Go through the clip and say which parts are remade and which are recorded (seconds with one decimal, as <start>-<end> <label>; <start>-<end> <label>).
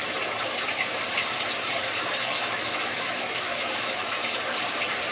0.0-2.2 recorded; 2.2-4.2 remade; 4.2-5.1 recorded